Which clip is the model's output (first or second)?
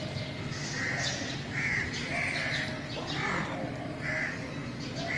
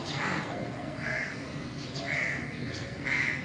second